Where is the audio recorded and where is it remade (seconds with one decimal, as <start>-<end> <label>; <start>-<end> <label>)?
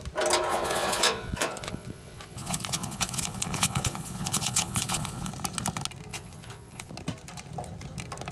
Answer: 0.0-0.5 recorded; 0.5-5.3 remade; 5.3-6.1 recorded; 6.1-6.9 remade; 6.9-8.3 recorded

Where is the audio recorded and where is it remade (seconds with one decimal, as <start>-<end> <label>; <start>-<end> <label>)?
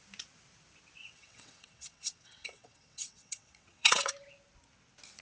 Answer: 0.0-1.0 recorded; 1.0-4.1 remade; 4.1-5.2 recorded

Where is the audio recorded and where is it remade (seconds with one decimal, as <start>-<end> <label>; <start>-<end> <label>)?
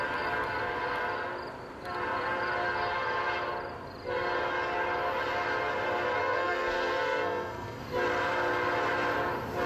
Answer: 0.0-6.2 recorded; 6.2-7.8 remade; 7.8-9.7 recorded